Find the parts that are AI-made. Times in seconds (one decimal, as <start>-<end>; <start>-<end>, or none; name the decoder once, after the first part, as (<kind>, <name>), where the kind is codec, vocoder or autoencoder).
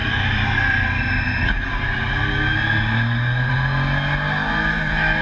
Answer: 0.0-1.1 (vocoder, BigVGAN v2)